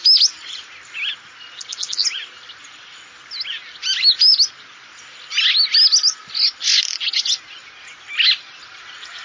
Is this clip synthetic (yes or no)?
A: no